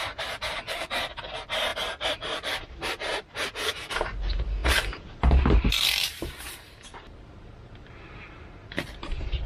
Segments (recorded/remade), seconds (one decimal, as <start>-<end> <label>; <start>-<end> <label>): 0.0-9.5 remade

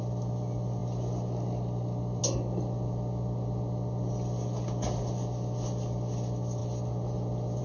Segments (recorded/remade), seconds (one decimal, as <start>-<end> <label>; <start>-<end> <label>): 0.0-7.6 recorded